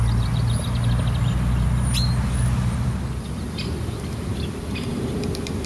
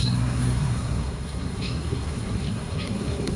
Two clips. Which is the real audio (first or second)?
first